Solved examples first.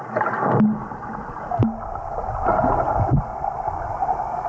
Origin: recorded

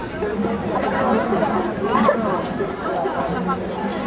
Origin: recorded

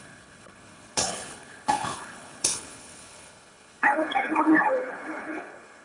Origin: remade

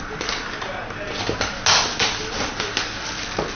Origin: recorded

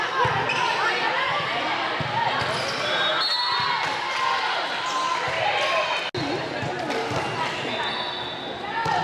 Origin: recorded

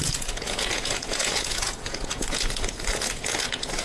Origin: remade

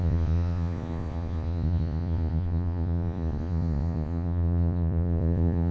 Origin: remade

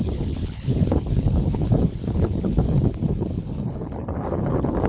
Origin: remade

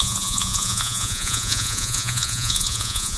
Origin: remade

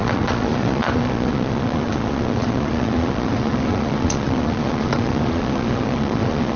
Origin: remade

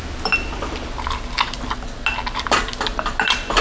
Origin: recorded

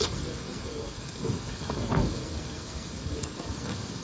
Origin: remade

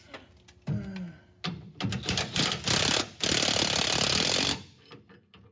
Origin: recorded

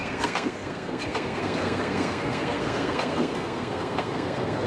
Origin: remade